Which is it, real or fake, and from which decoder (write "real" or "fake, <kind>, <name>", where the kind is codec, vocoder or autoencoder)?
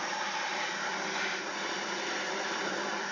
real